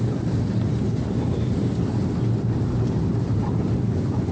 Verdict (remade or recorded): remade